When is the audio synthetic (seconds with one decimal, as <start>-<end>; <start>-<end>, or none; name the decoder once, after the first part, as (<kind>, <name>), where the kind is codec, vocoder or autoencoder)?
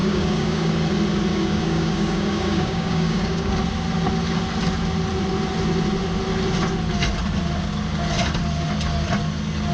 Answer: 0.0-0.7 (codec, DAC); 1.3-3.5